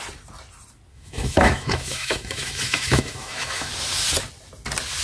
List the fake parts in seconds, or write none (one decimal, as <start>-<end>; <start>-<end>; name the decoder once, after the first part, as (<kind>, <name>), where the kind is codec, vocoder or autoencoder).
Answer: 0.9-3.7 (autoencoder, DAC-VAE)